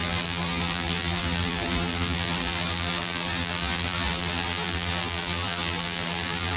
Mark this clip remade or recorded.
remade